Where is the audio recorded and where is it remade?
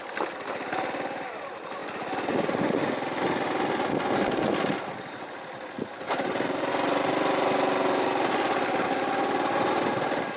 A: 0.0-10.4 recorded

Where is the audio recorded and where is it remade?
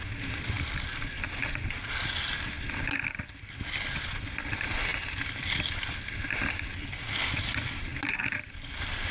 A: 0.0-9.1 recorded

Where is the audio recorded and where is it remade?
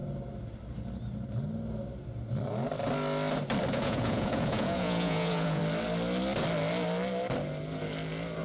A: 0.0-3.7 recorded; 3.7-5.6 remade; 5.6-8.4 recorded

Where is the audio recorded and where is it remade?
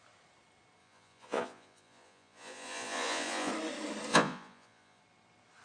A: 0.0-0.8 recorded; 0.8-3.5 remade; 3.5-4.1 recorded; 4.1-5.0 remade; 5.0-5.6 recorded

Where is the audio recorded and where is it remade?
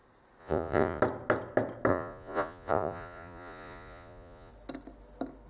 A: 0.0-0.4 recorded; 0.4-1.0 remade; 1.0-1.9 recorded; 1.9-4.5 remade; 4.5-5.5 recorded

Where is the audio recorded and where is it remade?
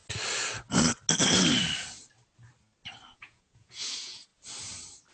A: 0.0-3.1 recorded; 3.1-4.3 remade; 4.3-5.1 recorded